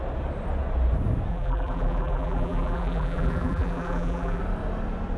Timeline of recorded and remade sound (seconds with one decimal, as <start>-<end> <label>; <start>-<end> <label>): 0.0-1.3 recorded; 1.3-4.4 remade; 4.4-5.2 recorded